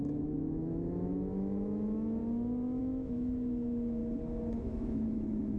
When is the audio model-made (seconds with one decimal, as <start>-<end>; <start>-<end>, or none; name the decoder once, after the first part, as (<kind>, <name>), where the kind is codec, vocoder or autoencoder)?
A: 0.0-2.2 (autoencoder, DAC-VAE); 2.8-4.0; 4.6-5.6